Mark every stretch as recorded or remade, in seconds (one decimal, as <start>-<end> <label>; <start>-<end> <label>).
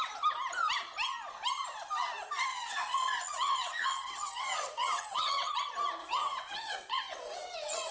0.0-2.5 recorded; 2.5-5.5 remade; 5.5-6.0 recorded; 6.0-7.9 remade